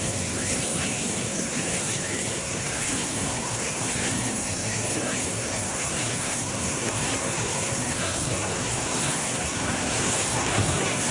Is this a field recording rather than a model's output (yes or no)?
no